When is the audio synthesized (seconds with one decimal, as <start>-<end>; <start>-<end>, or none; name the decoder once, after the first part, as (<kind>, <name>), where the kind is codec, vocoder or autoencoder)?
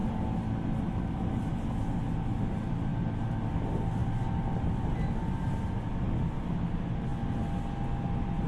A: none